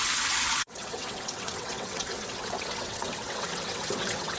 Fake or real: fake